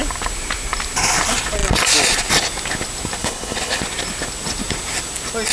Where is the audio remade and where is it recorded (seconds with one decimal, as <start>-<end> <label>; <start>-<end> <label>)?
0.0-3.2 recorded; 3.2-3.8 remade; 3.8-5.5 recorded